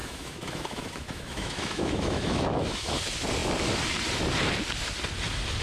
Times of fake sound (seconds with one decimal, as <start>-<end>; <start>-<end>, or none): 0.0-3.0